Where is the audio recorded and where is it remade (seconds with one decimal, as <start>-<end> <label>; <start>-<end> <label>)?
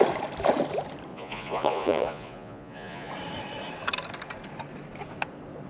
0.0-1.1 recorded; 1.1-3.1 remade; 3.1-5.7 recorded